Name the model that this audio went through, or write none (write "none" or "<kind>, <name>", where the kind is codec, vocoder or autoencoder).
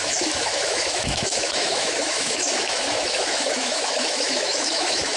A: autoencoder, DAC-VAE